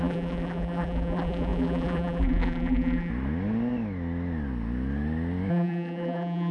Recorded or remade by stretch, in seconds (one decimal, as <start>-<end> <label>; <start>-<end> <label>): 0.0-3.1 remade; 3.1-5.5 recorded; 5.5-6.5 remade